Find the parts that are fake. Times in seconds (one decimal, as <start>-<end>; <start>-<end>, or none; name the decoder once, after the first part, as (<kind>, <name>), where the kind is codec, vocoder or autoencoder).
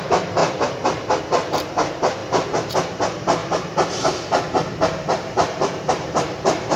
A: 0.0-0.4 (vocoder, BigVGAN v2); 1.2-2.2; 2.7-3.4; 5.9-6.8